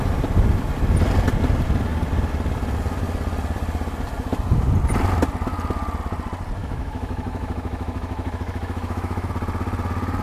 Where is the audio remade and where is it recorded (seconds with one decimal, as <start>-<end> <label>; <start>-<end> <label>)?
0.0-6.6 recorded; 6.6-9.3 remade; 9.3-10.2 recorded